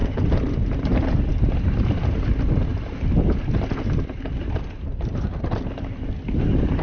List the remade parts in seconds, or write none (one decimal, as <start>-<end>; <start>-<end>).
0.0-2.3